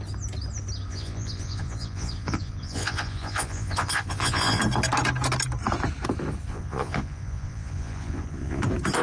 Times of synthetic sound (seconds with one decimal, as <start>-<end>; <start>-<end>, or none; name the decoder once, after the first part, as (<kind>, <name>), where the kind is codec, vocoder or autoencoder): 0.9-4.6 (vocoder, Vocos); 6.5-8.6